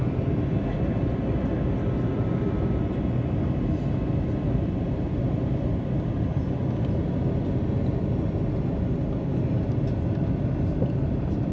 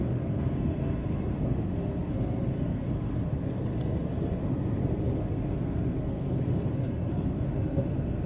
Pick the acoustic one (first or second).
first